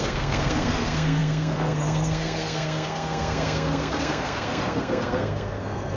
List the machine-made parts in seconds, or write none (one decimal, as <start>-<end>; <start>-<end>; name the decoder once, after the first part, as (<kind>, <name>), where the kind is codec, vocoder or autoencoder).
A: 0.0-6.0 (codec, SNAC)